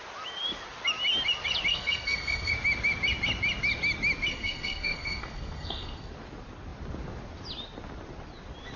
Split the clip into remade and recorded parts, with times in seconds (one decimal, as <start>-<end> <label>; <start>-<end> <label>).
0.0-1.7 recorded; 1.7-2.5 remade; 2.5-4.3 recorded; 4.3-6.1 remade; 6.1-8.8 recorded